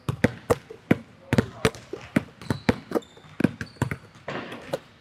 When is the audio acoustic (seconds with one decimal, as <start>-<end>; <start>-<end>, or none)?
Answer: 0.0-3.4; 4.2-5.0